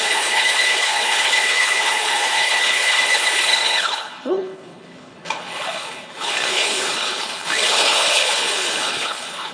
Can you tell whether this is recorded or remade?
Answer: remade